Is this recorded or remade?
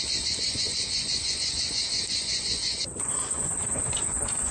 remade